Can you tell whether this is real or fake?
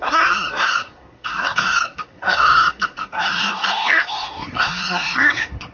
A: fake